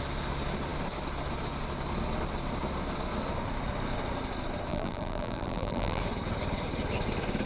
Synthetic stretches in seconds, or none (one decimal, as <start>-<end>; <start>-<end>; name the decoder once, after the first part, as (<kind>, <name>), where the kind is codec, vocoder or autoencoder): 4.7-6.0 (vocoder, BigVGAN v2)